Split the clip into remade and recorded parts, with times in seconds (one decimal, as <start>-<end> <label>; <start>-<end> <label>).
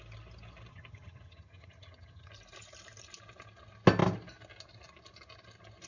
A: 0.0-0.7 recorded; 0.7-2.3 remade; 2.3-5.9 recorded